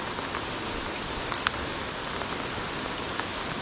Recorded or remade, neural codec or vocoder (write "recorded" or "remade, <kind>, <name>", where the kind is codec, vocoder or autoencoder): recorded